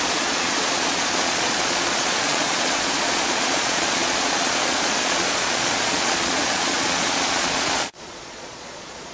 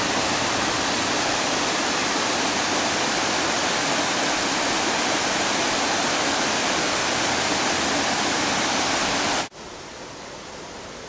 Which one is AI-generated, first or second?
first